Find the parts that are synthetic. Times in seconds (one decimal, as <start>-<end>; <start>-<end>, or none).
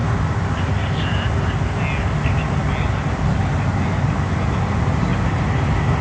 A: none